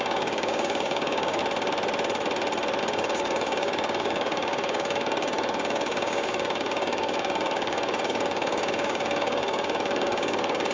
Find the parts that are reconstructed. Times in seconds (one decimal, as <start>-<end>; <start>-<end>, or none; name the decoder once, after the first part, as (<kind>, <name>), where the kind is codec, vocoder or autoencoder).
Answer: 0.0-1.4 (codec, DAC); 2.8-10.7